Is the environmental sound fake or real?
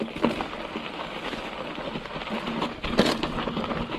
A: real